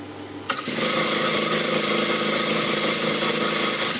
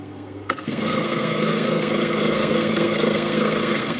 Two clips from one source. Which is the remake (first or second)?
second